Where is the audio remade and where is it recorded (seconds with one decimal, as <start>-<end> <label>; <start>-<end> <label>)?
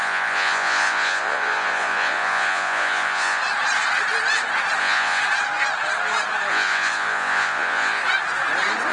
0.0-3.4 remade; 3.4-4.8 recorded; 4.8-5.2 remade; 5.2-6.5 recorded; 6.5-8.0 remade; 8.0-8.9 recorded